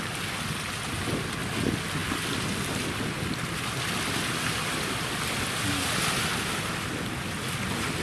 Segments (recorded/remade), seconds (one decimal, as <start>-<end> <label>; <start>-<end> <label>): 0.0-8.0 recorded